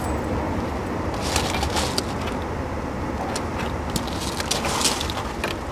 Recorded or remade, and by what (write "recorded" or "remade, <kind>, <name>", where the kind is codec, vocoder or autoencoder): recorded